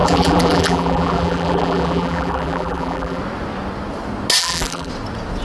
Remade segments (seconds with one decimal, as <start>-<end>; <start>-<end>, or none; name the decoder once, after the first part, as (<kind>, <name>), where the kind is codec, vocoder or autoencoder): 0.0-3.2 (vocoder, BigVGAN v2); 4.4-4.9